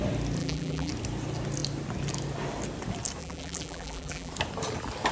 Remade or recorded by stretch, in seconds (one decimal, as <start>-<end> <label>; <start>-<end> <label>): 0.0-0.4 recorded; 0.4-0.9 remade; 0.9-3.2 recorded; 3.2-4.3 remade; 4.3-5.1 recorded